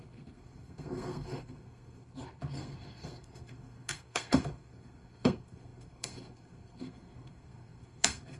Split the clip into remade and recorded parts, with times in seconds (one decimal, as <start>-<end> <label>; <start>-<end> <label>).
0.0-8.4 remade